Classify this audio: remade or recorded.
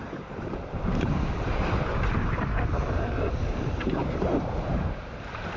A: remade